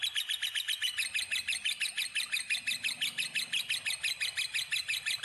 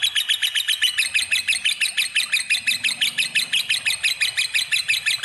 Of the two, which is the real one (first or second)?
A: second